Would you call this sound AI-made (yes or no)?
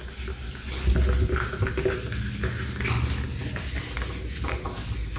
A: no